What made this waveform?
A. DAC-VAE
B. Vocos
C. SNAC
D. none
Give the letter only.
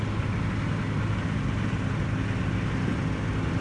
D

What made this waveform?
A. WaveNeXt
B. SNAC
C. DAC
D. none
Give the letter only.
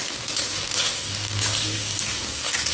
C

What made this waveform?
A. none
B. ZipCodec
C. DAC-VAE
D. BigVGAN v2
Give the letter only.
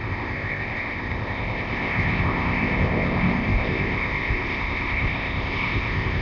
B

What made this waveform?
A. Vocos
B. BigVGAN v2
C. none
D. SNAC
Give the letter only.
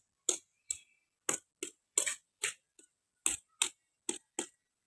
C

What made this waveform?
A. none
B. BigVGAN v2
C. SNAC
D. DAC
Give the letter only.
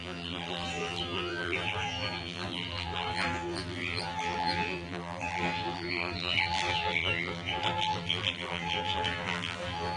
B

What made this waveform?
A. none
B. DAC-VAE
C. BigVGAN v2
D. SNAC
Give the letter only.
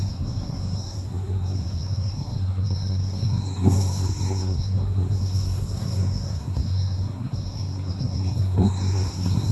D